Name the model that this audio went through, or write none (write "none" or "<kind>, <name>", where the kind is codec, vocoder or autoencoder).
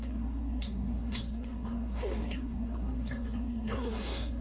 codec, SNAC